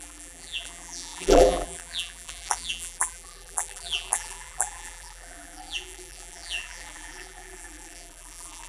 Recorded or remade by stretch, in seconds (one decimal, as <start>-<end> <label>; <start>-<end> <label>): 0.0-8.7 remade